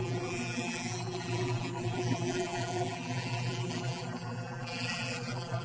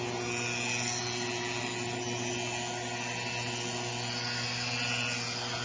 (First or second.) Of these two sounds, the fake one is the first